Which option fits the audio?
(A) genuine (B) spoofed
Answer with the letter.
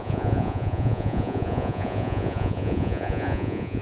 B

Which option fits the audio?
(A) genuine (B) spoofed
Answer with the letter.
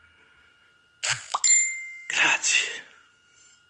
A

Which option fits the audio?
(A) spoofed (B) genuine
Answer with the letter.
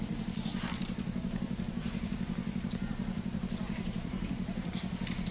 A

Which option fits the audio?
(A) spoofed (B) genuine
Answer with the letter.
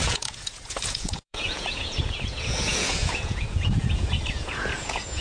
A